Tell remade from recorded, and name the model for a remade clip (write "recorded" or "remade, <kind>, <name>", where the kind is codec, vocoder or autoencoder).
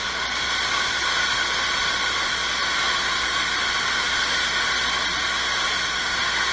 recorded